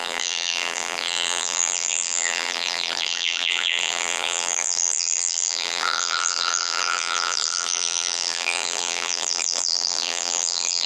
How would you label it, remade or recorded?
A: remade